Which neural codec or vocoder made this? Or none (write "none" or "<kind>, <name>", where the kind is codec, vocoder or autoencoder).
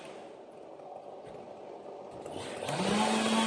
none